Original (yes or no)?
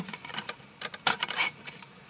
no